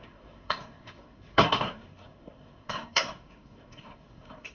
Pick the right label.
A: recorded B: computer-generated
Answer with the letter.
B